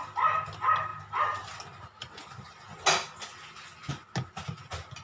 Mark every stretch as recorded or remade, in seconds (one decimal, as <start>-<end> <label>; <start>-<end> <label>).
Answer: 0.0-5.0 recorded